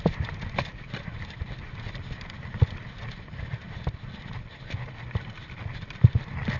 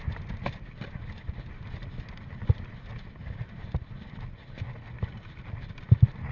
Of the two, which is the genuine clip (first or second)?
second